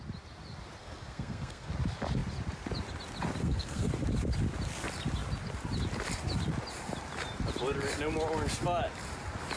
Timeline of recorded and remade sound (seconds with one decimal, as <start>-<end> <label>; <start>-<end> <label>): 0.0-0.8 recorded; 0.8-1.7 remade; 1.7-3.4 recorded; 3.4-3.9 remade; 3.9-9.6 recorded